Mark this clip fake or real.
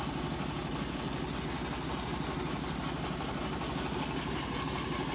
real